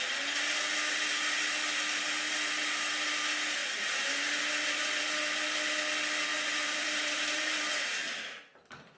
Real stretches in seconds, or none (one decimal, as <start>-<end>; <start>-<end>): 0.0-6.3; 7.6-9.0